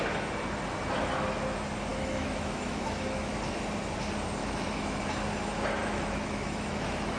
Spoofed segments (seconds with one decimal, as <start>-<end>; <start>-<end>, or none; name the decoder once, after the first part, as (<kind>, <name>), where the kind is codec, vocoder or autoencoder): 1.9-3.3 (autoencoder, DAC-VAE); 4.4-5.0; 5.8-7.2